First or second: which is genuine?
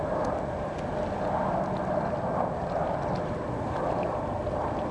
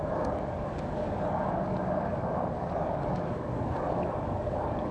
first